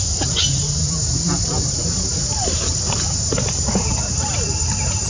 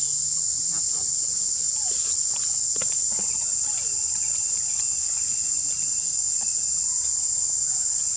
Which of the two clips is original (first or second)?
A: second